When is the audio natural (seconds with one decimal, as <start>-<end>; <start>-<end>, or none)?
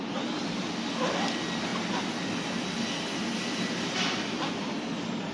0.0-5.3